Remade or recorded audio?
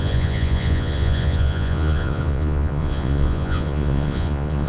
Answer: remade